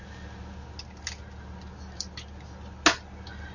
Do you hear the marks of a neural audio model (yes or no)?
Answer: no